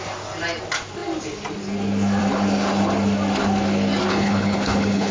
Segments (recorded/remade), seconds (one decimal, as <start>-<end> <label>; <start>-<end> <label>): 0.0-4.1 recorded; 4.1-5.1 remade

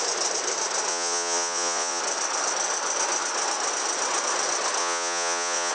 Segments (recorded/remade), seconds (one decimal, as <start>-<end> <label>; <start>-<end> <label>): 0.0-0.9 recorded; 0.9-2.0 remade; 2.0-4.8 recorded; 4.8-5.7 remade